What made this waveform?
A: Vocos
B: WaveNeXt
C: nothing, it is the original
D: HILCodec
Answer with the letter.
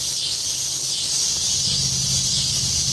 C